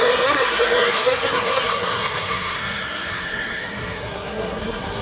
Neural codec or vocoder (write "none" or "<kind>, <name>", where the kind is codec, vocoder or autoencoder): codec, SNAC